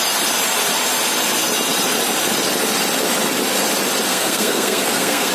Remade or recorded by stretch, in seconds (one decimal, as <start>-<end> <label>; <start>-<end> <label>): 0.0-4.1 recorded; 4.1-5.3 remade

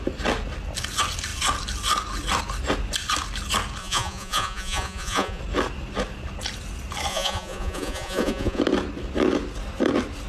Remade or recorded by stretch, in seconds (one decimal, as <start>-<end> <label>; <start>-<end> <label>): 0.0-3.8 recorded; 3.8-5.4 remade; 5.4-7.1 recorded; 7.1-8.6 remade; 8.6-10.3 recorded

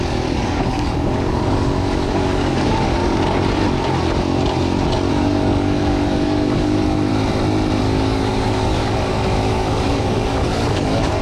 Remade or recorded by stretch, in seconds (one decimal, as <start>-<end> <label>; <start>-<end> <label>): 0.0-3.0 remade; 3.0-5.1 recorded; 5.1-7.1 remade; 7.1-7.8 recorded; 7.8-11.2 remade

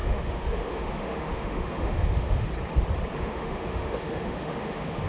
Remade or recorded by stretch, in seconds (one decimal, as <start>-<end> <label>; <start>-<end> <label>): 0.0-2.5 remade; 2.5-3.2 recorded; 3.2-5.1 remade

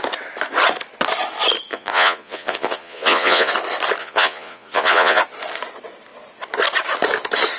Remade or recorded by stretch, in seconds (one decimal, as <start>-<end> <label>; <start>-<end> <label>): 0.0-1.7 recorded; 1.7-3.5 remade; 3.5-4.0 recorded; 4.0-5.2 remade; 5.2-7.6 recorded